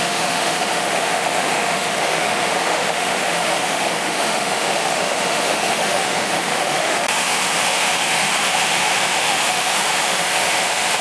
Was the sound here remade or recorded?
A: remade